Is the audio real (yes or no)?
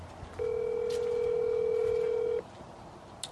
yes